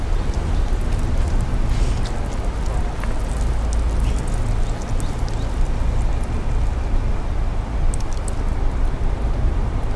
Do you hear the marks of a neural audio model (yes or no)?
no